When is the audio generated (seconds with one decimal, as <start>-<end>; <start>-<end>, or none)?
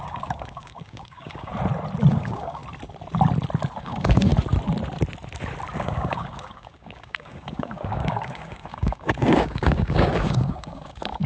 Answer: 0.0-1.5; 2.1-2.6; 3.8-4.3; 5.8-11.3